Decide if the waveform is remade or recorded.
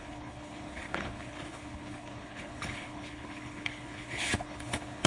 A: remade